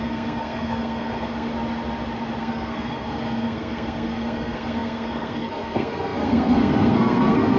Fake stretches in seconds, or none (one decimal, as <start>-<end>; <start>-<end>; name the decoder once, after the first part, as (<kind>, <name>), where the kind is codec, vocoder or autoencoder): 0.0-1.5 (codec, SNAC); 2.4-7.6